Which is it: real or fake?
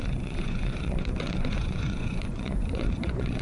fake